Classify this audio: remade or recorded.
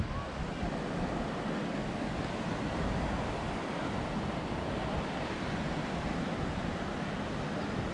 recorded